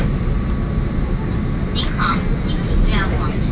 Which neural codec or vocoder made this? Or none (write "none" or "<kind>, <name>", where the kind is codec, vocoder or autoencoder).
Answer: none